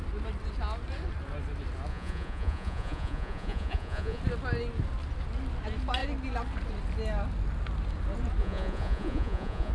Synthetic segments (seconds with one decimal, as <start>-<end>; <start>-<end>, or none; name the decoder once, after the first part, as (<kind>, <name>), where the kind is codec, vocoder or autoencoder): 1.9-4.2 (vocoder, Vocos); 8.4-9.7